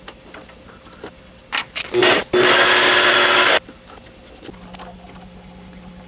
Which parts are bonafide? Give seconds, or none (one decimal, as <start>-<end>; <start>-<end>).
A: 0.0-6.1